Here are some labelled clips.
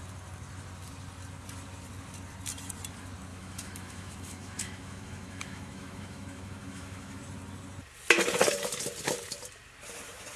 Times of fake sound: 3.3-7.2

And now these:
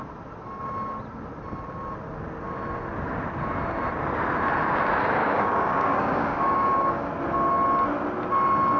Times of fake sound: 5.2-7.1

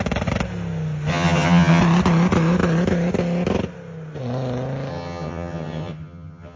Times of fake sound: 1.1-1.8; 4.9-6.6